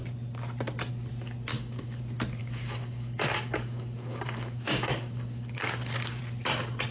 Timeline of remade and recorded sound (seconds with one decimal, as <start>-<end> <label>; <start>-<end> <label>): 0.0-1.5 recorded; 1.5-2.0 remade; 2.0-2.4 recorded; 2.4-6.2 remade; 6.2-6.9 recorded

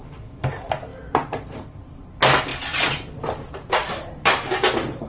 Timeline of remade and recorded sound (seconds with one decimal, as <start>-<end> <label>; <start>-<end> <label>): 0.0-2.5 recorded; 2.5-3.9 remade; 3.9-5.1 recorded

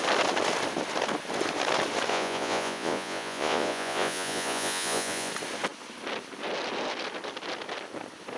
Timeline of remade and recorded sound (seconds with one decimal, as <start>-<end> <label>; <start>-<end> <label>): 0.0-2.1 recorded; 2.1-5.3 remade; 5.3-8.4 recorded

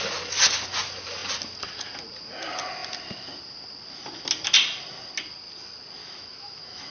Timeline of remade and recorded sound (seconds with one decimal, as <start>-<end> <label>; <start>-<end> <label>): 0.0-6.0 recorded; 6.0-6.9 remade

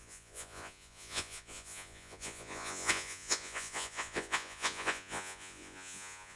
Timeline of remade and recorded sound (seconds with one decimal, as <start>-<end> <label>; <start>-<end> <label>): 0.0-6.4 remade

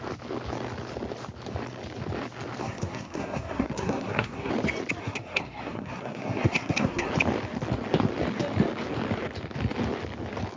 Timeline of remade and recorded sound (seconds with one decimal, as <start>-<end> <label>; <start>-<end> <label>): 0.0-2.6 recorded; 2.6-4.5 remade; 4.5-5.0 recorded; 5.0-7.1 remade; 7.1-10.6 recorded